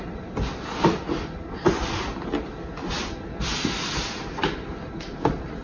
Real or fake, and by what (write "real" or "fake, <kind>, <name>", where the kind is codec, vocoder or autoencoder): real